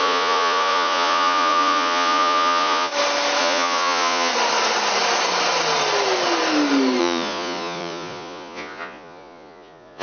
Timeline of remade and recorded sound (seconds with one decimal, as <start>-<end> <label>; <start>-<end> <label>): 0.0-2.9 remade; 2.9-3.4 recorded; 3.4-4.3 remade; 4.3-7.0 recorded; 7.0-10.0 remade

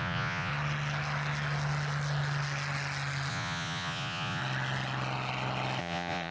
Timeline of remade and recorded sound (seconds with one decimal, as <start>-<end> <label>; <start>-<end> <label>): 0.0-0.5 remade; 0.5-3.3 recorded; 3.3-4.4 remade; 4.4-5.8 recorded; 5.8-6.3 remade

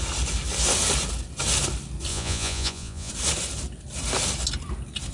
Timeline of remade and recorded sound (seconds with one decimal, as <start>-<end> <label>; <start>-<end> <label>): 0.0-2.1 recorded; 2.1-3.1 remade; 3.1-5.1 recorded

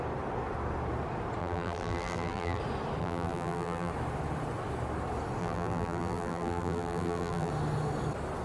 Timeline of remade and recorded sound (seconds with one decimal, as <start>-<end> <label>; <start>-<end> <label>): 0.0-1.4 recorded; 1.4-2.6 remade; 2.6-3.0 recorded; 3.0-3.9 remade; 3.9-5.4 recorded; 5.4-7.5 remade; 7.5-8.4 recorded

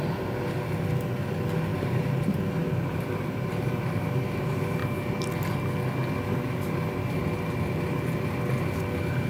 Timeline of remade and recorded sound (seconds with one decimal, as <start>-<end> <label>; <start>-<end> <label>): 0.0-1.7 recorded; 1.7-4.0 remade; 4.0-9.3 recorded

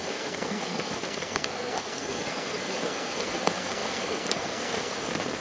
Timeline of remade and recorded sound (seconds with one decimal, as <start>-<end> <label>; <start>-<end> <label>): 0.0-5.4 remade